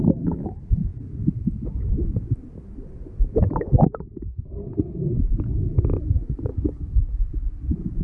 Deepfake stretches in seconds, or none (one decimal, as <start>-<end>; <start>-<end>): 4.6-5.2; 6.5-7.2